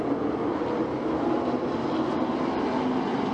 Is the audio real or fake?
real